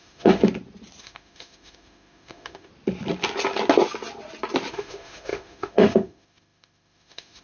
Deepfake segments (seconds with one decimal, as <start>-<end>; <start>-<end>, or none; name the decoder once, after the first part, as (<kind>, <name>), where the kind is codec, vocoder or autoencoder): 0.0-0.4 (autoencoder, DAC-VAE); 1.0-2.7; 4.7-7.4